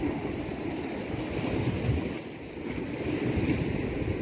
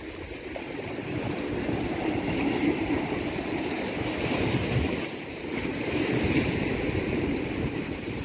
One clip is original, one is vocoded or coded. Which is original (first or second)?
first